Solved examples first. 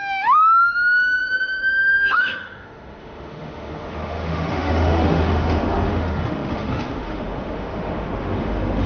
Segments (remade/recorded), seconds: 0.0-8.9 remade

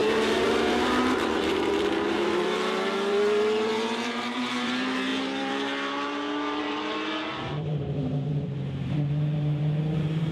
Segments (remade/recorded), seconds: 0.0-10.3 remade

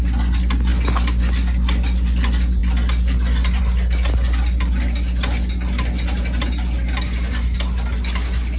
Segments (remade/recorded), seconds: 0.0-8.6 recorded

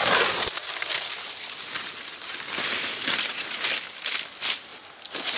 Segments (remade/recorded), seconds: 0.0-5.4 recorded

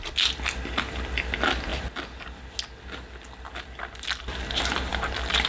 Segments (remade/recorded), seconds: 0.0-5.5 recorded

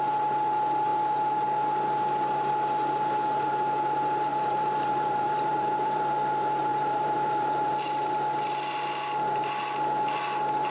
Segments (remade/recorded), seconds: 0.0-4.3 recorded; 4.3-6.1 remade; 6.1-6.7 recorded; 6.7-7.7 remade; 7.7-10.7 recorded

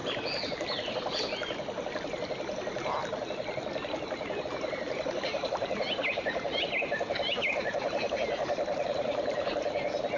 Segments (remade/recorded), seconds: 0.0-10.2 recorded

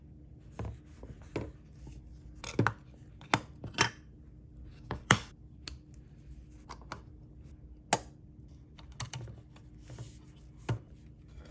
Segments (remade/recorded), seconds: 0.0-4.7 recorded; 4.7-5.3 remade; 5.3-11.5 recorded